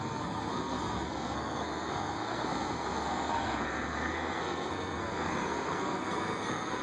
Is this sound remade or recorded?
remade